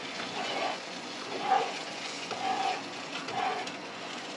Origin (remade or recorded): remade